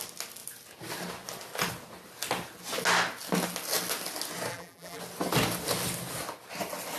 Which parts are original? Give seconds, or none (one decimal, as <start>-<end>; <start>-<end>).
0.0-4.5; 5.0-7.0